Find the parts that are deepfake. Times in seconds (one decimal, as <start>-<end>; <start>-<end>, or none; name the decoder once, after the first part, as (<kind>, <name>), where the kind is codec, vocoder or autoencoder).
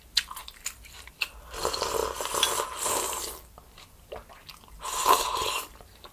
none